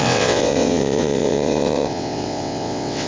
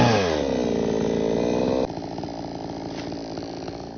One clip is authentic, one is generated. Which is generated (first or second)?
first